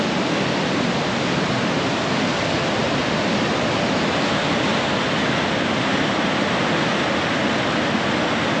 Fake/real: real